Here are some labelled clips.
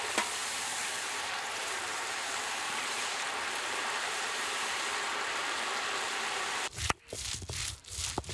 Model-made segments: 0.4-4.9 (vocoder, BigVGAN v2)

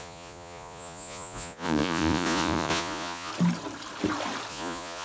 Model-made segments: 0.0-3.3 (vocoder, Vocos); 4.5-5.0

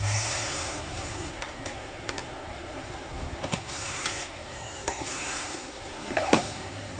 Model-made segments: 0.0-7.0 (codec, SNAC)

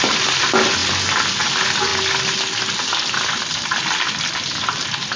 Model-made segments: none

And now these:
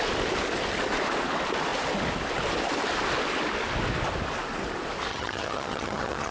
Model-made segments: 5.1-6.3 (vocoder, HiFi-GAN)

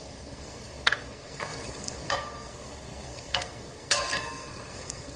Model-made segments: 0.0-5.2 (codec, SNAC)